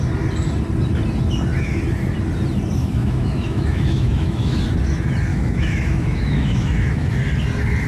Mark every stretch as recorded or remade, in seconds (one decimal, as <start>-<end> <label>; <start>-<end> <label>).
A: 0.0-2.8 recorded; 2.8-4.6 remade; 4.6-5.3 recorded; 5.3-7.1 remade; 7.1-7.9 recorded

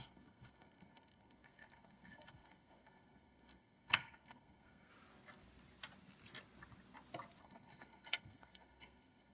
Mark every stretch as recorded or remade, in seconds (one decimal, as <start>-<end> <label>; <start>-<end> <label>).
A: 0.0-4.9 remade; 4.9-7.4 recorded; 7.4-9.3 remade

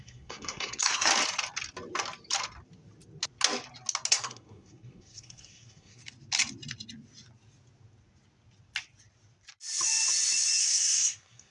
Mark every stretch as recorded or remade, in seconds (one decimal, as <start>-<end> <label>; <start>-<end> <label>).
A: 0.0-1.1 remade; 1.1-4.1 recorded; 4.1-6.0 remade; 6.0-10.6 recorded; 10.6-11.5 remade

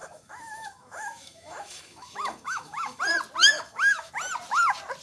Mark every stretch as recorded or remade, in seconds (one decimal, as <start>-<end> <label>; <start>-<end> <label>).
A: 0.0-3.0 remade; 3.0-3.4 recorded; 3.4-4.1 remade; 4.1-5.0 recorded

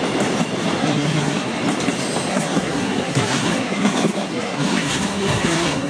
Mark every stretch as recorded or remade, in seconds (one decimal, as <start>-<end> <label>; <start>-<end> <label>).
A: 0.0-0.8 recorded; 0.8-1.6 remade; 1.6-2.3 recorded; 2.3-5.9 remade

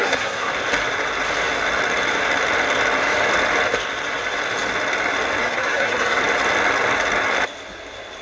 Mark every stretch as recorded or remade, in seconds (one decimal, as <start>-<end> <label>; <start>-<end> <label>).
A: 0.0-0.5 remade; 0.5-5.4 recorded; 5.4-6.2 remade; 6.2-8.2 recorded

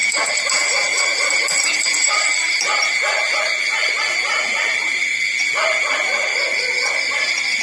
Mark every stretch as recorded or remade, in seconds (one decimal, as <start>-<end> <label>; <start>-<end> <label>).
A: 0.0-6.3 remade; 6.3-7.6 recorded